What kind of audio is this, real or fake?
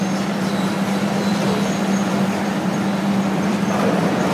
fake